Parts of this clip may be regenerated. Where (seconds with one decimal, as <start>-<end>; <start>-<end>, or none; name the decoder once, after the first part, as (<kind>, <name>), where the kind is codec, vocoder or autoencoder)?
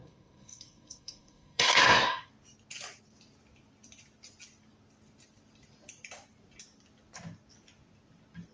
0.0-2.3 (codec, SNAC)